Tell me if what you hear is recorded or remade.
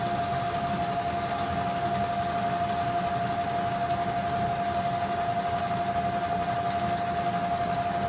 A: recorded